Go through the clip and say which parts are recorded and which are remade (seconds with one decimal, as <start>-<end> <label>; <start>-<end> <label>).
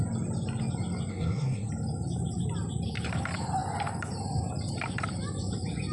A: 0.0-1.1 recorded; 1.1-1.7 remade; 1.7-5.9 recorded